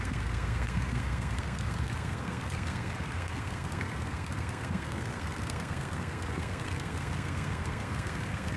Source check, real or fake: fake